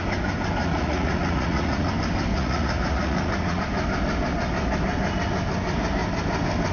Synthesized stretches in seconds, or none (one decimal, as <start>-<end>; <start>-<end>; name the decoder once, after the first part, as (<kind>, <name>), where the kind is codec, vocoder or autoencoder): 0.6-1.9 (vocoder, Vocos); 2.3-3.6

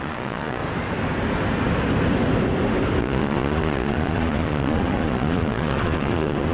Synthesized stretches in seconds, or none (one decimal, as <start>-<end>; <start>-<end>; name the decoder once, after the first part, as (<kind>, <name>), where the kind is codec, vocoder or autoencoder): 0.0-0.6 (vocoder, Vocos); 3.0-6.5

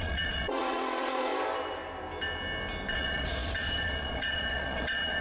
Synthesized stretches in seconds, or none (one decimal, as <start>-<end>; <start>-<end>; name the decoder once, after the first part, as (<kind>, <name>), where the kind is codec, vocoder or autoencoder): 0.0-1.3 (vocoder, Vocos); 2.9-5.2

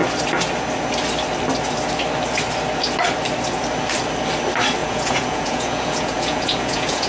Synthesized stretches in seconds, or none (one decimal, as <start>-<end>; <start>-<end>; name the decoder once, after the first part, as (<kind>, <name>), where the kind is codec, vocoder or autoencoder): 4.8-7.1 (vocoder, Vocos)